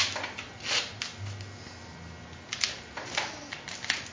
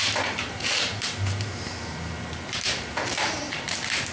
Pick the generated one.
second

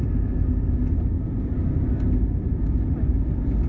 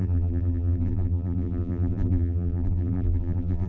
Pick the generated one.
second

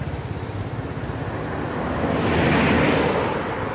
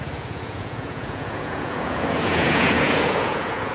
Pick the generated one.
second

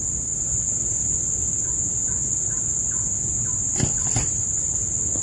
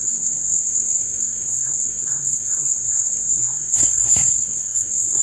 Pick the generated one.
second